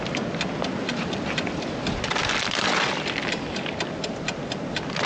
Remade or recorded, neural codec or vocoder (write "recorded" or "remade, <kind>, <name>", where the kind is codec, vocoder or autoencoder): recorded